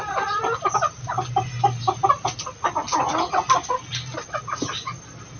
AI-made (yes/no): no